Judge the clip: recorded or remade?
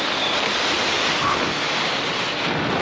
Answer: recorded